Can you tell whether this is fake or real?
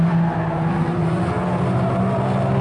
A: real